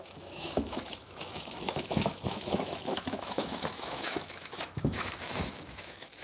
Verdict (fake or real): fake